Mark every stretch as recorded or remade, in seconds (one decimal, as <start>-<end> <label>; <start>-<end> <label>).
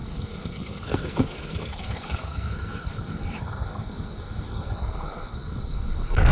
0.0-6.3 remade